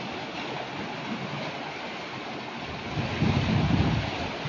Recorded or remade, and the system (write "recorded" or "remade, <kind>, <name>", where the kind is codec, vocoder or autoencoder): recorded